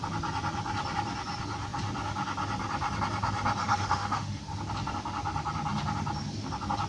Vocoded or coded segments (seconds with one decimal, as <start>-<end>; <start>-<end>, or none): 3.6-4.4